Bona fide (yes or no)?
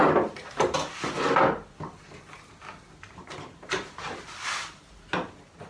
yes